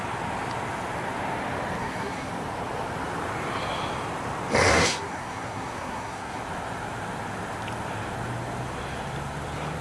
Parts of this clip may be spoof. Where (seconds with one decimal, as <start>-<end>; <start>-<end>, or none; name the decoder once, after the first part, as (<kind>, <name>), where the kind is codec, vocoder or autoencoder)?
1.8-2.3 (codec, SNAC); 4.7-6.4